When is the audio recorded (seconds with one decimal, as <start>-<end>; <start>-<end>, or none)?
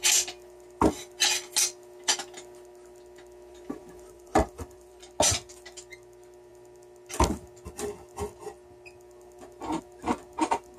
0.0-3.5; 5.0-10.8